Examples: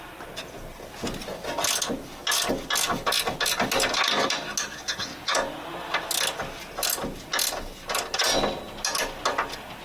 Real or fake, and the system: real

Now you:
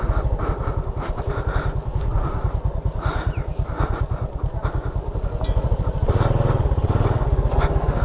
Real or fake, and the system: real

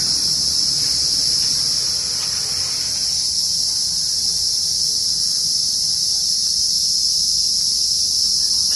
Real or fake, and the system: real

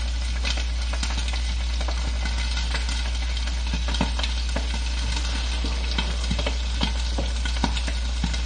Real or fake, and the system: real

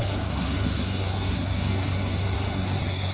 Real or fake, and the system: fake, codec, SNAC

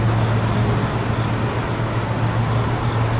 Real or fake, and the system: real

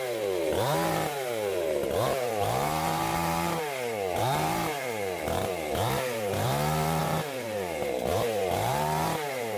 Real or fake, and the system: fake, vocoder, BigVGAN v2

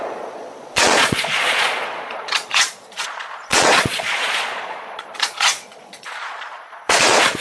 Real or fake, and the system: fake, vocoder, Vocos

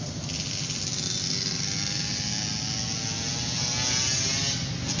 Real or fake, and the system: real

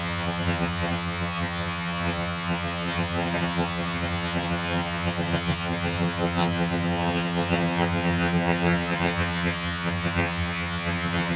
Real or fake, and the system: fake, vocoder, HiFi-GAN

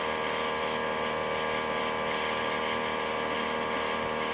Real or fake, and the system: real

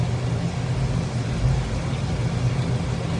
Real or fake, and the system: real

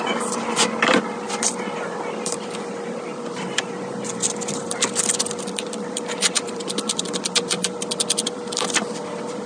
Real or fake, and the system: fake, vocoder, BigVGAN v2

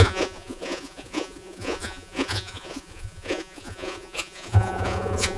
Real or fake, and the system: fake, vocoder, Vocos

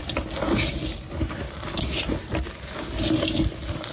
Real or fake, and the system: real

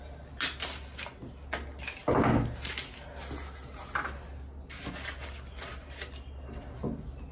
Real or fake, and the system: real